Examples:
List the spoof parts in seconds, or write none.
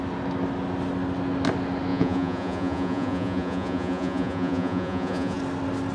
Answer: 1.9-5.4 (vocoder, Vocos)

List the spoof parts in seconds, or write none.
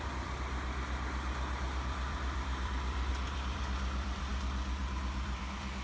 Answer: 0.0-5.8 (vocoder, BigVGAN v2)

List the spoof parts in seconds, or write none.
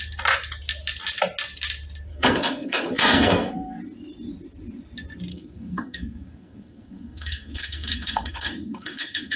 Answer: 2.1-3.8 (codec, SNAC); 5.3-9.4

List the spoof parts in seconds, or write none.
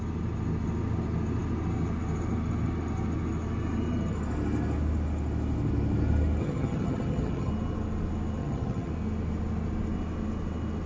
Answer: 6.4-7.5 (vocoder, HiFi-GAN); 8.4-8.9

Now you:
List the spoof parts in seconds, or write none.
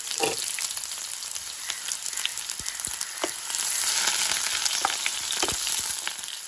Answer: none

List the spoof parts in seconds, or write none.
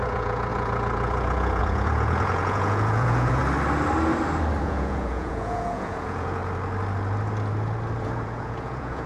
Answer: 0.0-3.4 (vocoder, Vocos); 4.6-6.4; 8.0-9.1